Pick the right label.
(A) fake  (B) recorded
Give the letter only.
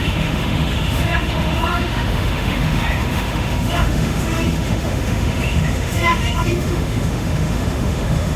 A